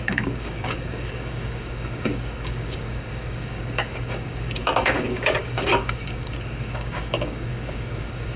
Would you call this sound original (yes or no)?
no